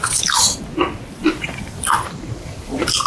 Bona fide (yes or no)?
no